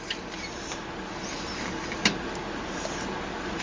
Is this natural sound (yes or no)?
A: yes